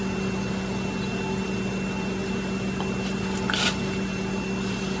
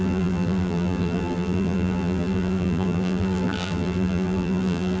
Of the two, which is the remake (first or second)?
second